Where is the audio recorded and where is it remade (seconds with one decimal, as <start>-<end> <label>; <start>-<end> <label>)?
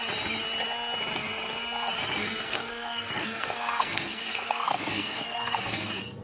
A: 0.0-2.2 recorded; 2.2-6.2 remade